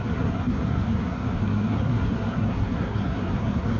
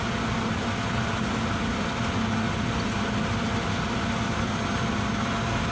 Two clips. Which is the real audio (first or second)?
second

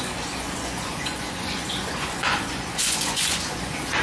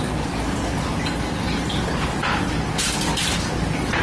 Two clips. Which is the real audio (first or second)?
second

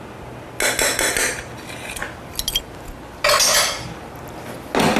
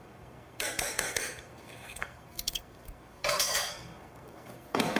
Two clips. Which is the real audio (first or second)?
first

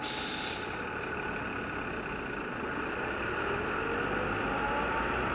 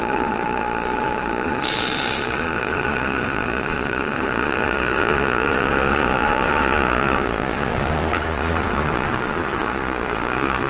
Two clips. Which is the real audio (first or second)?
first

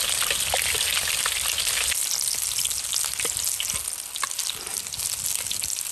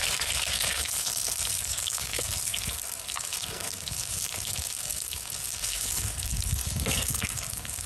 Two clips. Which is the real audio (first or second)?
first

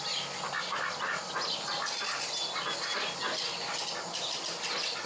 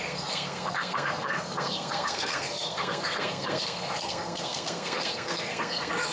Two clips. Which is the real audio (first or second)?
first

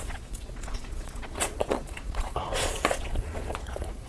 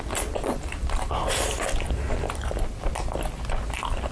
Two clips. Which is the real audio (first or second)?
second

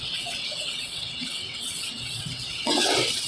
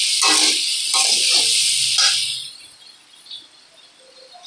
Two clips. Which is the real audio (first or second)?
second